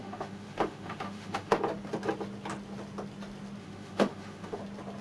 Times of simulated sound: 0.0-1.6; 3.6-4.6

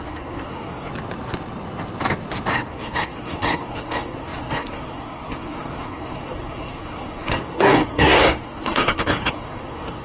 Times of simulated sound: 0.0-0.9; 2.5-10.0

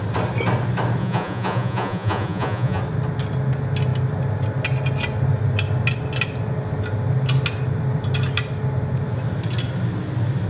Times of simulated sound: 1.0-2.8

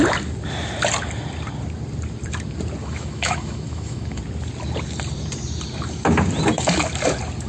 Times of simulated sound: 2.8-4.2

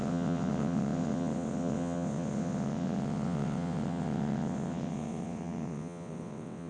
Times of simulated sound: 0.0-6.7

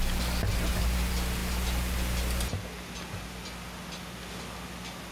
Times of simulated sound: none

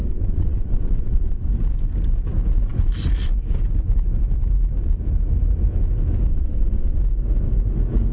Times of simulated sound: 0.0-1.5; 6.3-7.0